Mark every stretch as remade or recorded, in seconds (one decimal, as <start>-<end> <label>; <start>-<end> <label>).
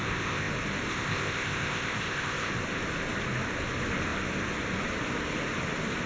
0.0-0.5 remade; 0.5-0.9 recorded; 0.9-2.5 remade; 2.5-6.1 recorded